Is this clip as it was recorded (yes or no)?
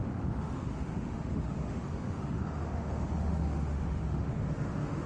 no